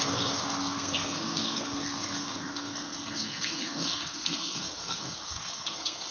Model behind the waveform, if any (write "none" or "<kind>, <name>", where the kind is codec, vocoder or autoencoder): codec, SNAC